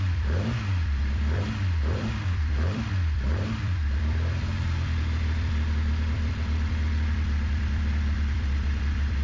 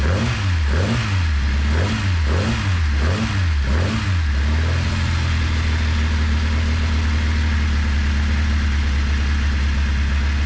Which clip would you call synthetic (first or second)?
first